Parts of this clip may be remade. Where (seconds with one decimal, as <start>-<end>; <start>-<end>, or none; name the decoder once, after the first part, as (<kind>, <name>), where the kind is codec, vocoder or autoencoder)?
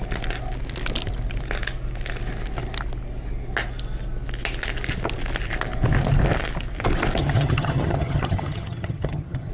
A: 7.2-9.5 (vocoder, HiFi-GAN)